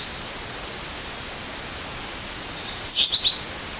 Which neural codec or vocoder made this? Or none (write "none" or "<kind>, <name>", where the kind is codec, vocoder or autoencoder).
none